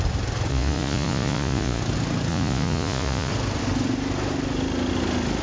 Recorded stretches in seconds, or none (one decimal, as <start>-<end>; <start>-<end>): 0.0-0.5; 1.8-2.3; 3.3-5.4